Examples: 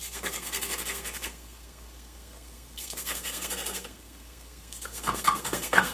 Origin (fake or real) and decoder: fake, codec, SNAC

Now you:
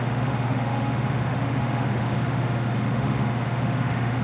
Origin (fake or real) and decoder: fake, autoencoder, DAC-VAE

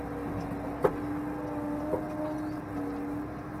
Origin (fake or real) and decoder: real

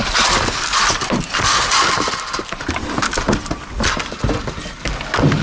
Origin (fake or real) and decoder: real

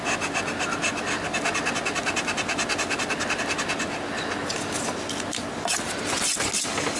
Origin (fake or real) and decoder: real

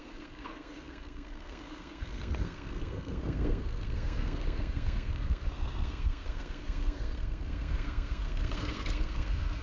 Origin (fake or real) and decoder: fake, codec, SNAC